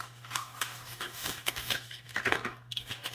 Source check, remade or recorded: remade